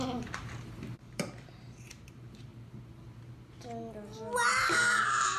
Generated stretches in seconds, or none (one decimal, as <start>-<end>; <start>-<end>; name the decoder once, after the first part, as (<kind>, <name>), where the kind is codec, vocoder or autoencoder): 0.0-2.5 (vocoder, BigVGAN v2); 4.5-5.4